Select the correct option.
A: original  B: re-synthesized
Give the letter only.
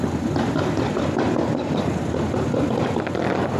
A